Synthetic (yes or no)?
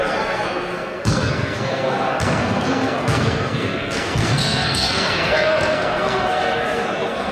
yes